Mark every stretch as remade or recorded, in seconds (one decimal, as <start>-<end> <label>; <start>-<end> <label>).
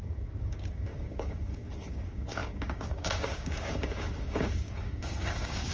0.0-5.7 remade